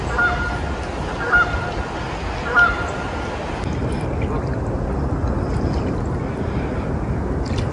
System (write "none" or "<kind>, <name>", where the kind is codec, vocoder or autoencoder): none